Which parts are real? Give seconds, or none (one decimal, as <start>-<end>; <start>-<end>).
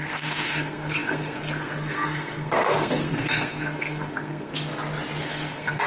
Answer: 4.5-5.2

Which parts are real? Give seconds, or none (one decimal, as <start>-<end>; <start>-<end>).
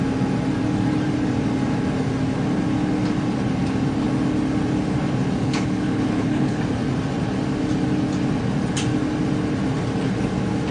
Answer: 0.0-5.4; 6.6-10.7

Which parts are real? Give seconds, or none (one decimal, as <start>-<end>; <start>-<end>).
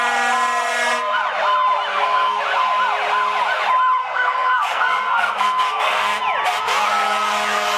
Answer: 0.0-1.9; 2.4-4.0; 6.2-7.8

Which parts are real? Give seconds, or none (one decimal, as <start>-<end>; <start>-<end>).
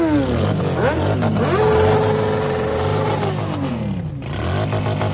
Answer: 0.0-5.1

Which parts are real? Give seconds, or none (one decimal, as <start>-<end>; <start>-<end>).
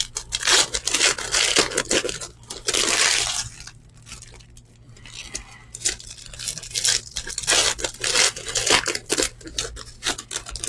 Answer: 0.0-10.7